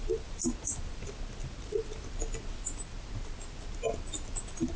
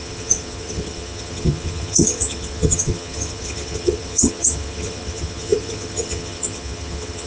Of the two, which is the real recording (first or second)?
first